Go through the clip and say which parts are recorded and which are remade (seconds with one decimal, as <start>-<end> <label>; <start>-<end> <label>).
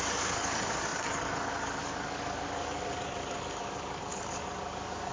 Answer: 0.0-5.1 remade